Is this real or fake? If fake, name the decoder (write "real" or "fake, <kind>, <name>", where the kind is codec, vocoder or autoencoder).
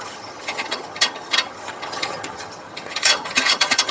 fake, vocoder, HiFi-GAN